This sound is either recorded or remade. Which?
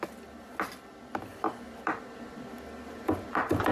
recorded